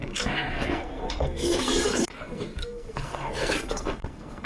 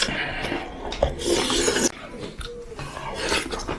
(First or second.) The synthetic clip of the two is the first